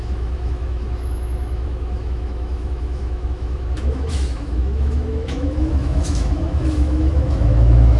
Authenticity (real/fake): fake